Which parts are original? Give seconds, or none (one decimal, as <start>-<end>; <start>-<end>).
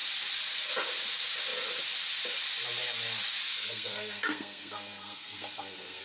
0.0-3.6